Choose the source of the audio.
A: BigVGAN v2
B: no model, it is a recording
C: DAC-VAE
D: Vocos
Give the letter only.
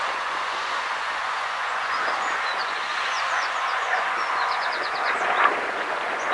D